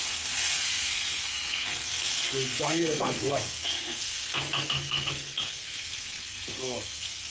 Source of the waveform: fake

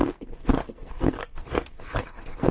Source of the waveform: fake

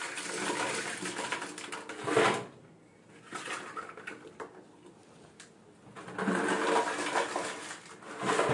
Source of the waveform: real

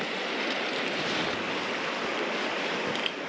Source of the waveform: real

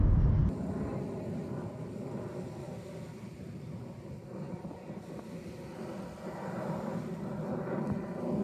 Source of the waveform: real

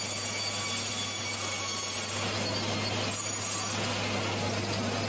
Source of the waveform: real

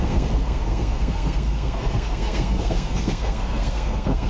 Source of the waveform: fake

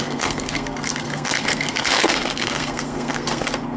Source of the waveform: fake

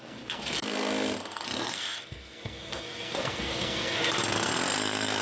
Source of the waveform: fake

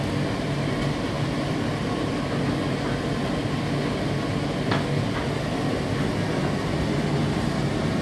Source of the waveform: real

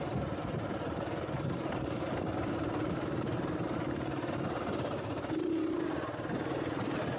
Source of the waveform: real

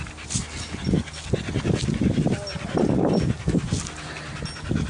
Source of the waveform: real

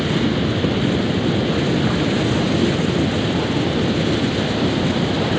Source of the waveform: real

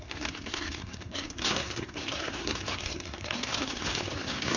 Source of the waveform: fake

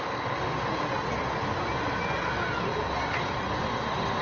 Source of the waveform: real